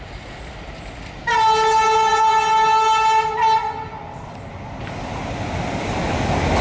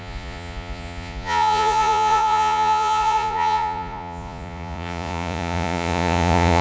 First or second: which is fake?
second